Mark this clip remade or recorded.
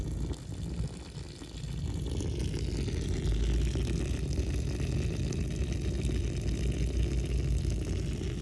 recorded